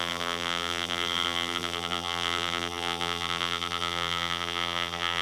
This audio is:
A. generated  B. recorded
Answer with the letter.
A